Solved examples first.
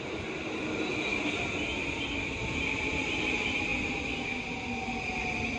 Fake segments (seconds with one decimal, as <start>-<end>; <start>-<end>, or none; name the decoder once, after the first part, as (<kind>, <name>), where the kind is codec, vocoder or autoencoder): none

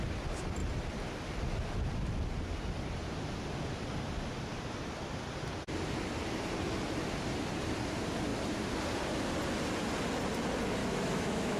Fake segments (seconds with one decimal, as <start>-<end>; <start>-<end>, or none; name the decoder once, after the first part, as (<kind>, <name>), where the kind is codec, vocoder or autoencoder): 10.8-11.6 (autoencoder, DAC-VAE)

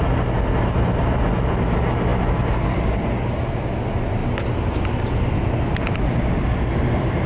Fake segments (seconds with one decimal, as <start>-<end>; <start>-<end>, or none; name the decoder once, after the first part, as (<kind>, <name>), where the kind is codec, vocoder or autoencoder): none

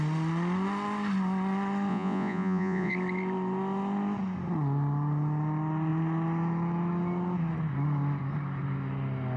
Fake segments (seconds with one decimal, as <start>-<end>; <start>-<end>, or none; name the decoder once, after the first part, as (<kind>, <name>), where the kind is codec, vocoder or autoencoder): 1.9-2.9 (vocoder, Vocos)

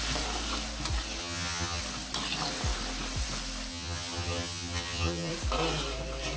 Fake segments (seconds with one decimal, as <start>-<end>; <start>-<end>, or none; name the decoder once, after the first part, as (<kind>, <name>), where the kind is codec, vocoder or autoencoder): 1.2-1.8 (vocoder, HiFi-GAN); 3.7-5.3

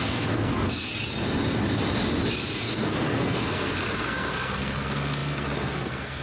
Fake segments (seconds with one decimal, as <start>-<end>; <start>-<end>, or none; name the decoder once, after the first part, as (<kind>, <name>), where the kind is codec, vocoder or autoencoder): 0.0-0.9 (codec, SNAC); 2.6-6.2

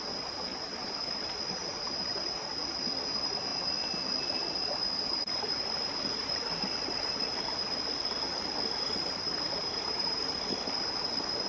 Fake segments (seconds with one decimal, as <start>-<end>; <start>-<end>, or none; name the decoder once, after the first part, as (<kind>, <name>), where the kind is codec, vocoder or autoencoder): 9.6-10.2 (vocoder, BigVGAN v2)

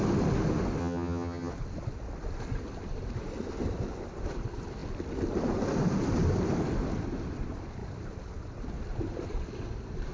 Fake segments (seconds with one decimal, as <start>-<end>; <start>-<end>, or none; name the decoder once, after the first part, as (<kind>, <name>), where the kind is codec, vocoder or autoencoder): 0.8-1.5 (vocoder, HiFi-GAN)